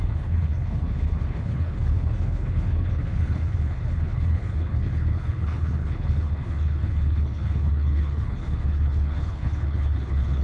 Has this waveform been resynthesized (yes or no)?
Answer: yes